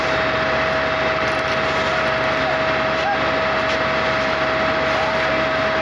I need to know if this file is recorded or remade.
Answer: recorded